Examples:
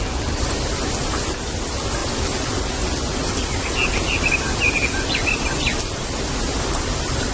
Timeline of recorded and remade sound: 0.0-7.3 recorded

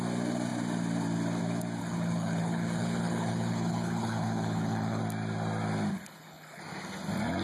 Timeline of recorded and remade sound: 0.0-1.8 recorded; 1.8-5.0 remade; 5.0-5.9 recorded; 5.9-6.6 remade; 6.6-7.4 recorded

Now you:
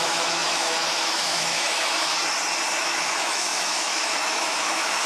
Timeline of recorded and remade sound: 0.0-2.2 remade; 2.2-2.8 recorded; 2.8-5.1 remade

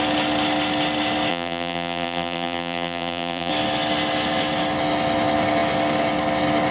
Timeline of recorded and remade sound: 0.0-1.3 recorded; 1.3-3.5 remade; 3.5-6.7 recorded

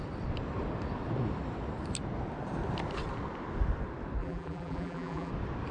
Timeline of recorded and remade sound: 0.0-4.2 recorded; 4.2-5.3 remade; 5.3-5.7 recorded